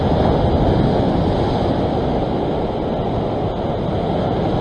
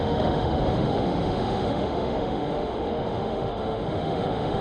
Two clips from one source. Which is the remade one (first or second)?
second